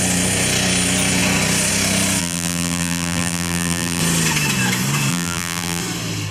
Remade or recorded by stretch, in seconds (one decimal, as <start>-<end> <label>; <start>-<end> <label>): 0.0-2.2 recorded; 2.2-4.0 remade; 4.0-5.1 recorded; 5.1-5.8 remade; 5.8-6.3 recorded